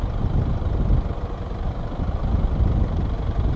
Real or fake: real